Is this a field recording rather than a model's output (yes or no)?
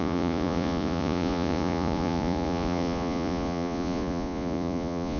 no